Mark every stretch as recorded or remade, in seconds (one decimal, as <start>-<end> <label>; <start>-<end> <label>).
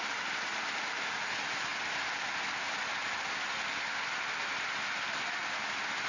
0.0-6.1 recorded